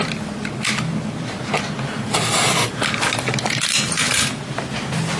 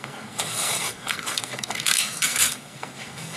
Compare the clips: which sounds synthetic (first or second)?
second